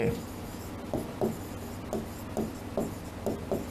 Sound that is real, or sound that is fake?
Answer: real